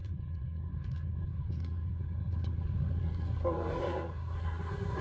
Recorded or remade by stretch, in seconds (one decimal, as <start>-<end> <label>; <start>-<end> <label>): 0.0-5.0 remade